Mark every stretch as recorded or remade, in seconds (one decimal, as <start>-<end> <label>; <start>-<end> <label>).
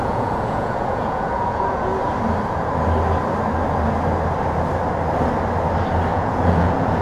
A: 0.0-1.9 remade; 1.9-6.1 recorded; 6.1-7.0 remade